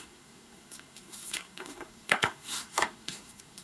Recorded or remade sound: remade